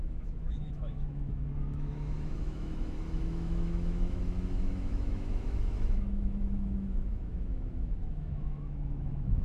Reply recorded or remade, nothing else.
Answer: remade